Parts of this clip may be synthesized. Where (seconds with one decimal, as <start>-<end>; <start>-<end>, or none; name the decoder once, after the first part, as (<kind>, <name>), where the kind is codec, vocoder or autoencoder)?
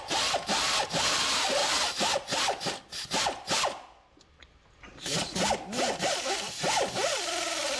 1.6-6.0 (vocoder, BigVGAN v2)